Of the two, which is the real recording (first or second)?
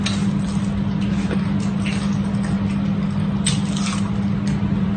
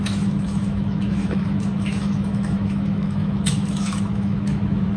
first